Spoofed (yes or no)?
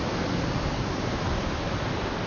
no